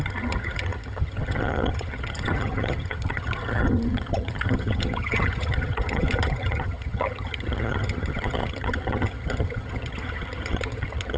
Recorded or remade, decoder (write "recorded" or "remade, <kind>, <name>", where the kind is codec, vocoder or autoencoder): remade, vocoder, HiFi-GAN